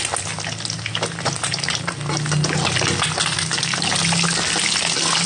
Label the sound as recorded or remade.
recorded